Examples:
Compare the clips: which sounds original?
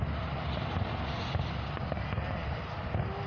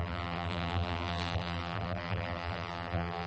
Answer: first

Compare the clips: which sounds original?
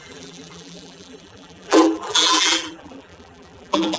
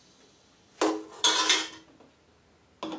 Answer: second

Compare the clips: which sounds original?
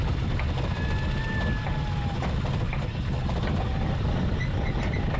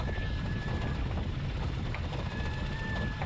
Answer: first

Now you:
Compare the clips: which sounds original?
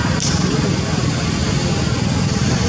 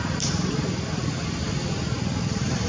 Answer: first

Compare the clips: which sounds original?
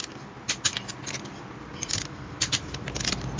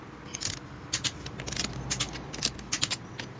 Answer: second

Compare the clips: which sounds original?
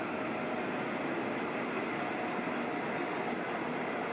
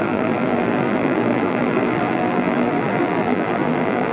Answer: first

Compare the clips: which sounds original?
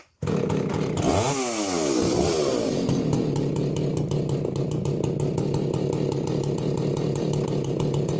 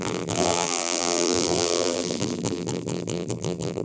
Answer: first